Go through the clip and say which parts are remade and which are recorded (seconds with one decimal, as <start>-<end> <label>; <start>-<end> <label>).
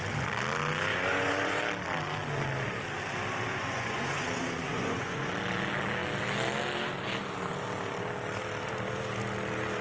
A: 0.0-0.9 recorded; 0.9-1.6 remade; 1.6-3.5 recorded; 3.5-5.3 remade; 5.3-9.8 recorded